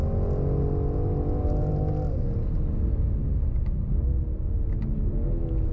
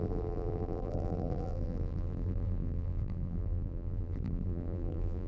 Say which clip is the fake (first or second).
second